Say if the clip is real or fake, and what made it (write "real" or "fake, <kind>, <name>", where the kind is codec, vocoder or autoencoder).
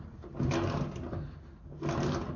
real